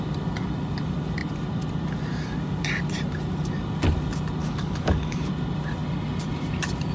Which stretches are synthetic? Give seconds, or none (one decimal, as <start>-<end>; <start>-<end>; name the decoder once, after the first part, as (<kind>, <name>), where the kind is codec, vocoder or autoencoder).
4.4-5.3 (codec, DAC)